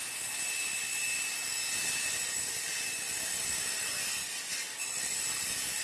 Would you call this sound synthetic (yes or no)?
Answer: no